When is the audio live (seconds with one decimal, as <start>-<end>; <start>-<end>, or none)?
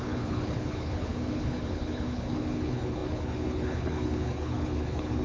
none